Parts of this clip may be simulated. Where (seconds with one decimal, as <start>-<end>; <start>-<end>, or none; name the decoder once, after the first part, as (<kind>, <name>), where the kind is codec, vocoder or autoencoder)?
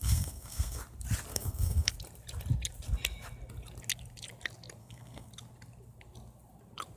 0.0-0.8 (codec, SNAC); 1.3-1.9; 4.8-5.3